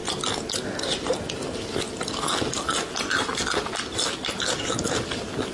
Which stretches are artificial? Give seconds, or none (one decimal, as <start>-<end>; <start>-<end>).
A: none